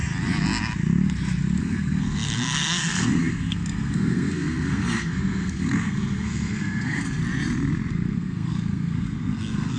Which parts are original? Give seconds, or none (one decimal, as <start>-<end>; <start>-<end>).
0.0-1.6; 7.2-7.9